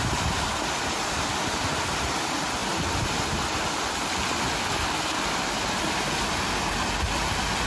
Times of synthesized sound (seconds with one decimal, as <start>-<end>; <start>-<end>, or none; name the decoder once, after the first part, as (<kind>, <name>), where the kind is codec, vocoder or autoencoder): none